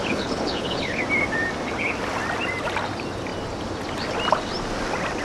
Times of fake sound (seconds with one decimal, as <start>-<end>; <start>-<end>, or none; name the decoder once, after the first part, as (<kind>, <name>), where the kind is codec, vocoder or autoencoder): 0.0-1.0 (codec, HILCodec)

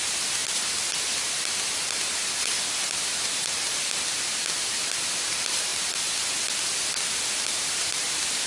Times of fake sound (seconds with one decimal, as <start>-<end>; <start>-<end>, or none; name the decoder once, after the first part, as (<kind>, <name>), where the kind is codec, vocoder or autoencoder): 0.0-0.4 (vocoder, BigVGAN v2); 1.1-5.7; 7.4-8.5

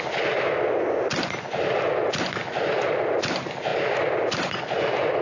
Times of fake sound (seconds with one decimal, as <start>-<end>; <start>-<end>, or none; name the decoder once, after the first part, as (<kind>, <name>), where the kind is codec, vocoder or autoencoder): none

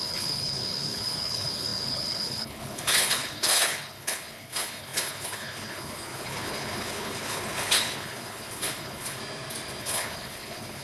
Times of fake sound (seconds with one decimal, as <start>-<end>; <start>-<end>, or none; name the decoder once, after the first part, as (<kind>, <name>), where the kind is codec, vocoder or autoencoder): 0.0-9.2 (codec, HILCodec); 9.8-10.8

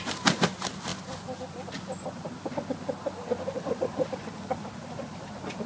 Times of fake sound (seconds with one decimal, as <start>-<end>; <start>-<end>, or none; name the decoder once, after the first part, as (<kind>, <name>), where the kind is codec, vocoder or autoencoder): none

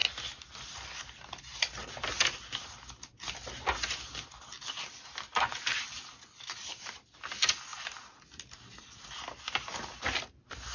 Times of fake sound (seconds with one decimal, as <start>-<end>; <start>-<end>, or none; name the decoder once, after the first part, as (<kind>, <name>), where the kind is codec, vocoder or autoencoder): none